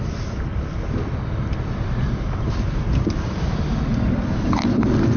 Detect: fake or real real